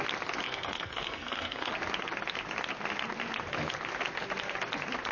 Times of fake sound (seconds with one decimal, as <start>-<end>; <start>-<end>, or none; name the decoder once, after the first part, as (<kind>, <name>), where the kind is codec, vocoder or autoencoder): 0.4-1.7 (codec, SNAC)